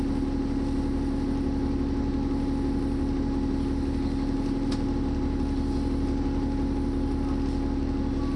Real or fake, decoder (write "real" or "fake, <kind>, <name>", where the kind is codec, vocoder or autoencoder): real